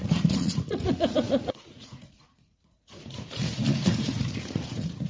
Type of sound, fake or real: fake